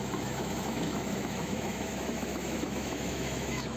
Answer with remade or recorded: remade